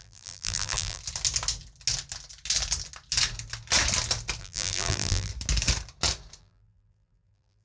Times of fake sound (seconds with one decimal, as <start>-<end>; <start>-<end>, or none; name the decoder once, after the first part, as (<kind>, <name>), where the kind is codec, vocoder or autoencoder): 0.0-1.0 (vocoder, BigVGAN v2); 4.4-5.3; 6.4-7.6

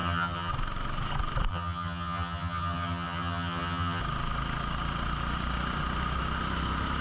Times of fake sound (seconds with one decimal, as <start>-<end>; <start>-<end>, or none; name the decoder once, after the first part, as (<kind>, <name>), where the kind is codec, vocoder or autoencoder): 0.0-0.5 (vocoder, HiFi-GAN); 1.5-4.0

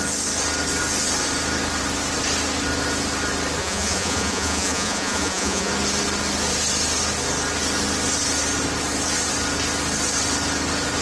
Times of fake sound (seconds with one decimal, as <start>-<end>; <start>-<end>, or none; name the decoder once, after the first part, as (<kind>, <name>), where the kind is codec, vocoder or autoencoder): 3.6-5.7 (vocoder, Vocos)